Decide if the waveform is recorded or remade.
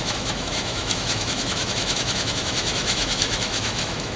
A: remade